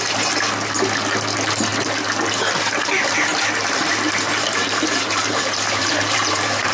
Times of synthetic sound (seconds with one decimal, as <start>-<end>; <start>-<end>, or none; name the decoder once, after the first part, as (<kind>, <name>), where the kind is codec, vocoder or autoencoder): 4.6-5.3 (vocoder, BigVGAN v2); 5.8-6.7